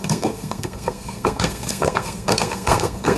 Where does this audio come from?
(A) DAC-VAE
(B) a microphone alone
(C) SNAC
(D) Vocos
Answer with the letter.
C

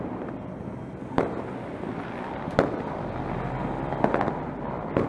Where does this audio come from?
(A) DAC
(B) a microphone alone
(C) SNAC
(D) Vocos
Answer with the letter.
B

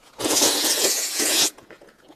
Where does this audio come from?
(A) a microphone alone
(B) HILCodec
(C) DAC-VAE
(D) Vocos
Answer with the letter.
D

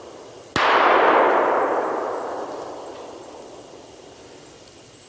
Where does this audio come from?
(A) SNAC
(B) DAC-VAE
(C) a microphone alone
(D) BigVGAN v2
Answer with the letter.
C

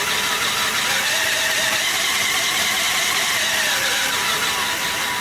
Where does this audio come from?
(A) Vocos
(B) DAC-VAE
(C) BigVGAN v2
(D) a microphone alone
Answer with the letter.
D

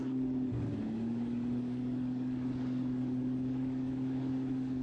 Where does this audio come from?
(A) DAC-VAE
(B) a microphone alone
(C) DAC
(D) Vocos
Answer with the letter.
C